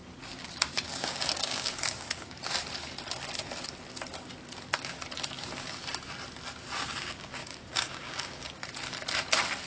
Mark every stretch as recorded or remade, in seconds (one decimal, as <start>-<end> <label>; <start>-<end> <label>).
0.0-0.9 recorded; 0.9-2.4 remade; 2.4-7.0 recorded; 7.0-8.6 remade; 8.6-9.7 recorded

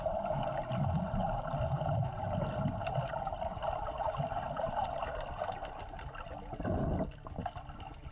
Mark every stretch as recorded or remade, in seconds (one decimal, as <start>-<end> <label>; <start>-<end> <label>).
0.0-2.0 recorded; 2.0-5.0 remade; 5.0-8.1 recorded

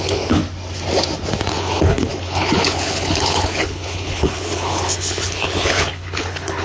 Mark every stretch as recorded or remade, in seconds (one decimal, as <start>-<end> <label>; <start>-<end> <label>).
0.0-0.4 remade; 0.4-1.5 recorded; 1.5-6.6 remade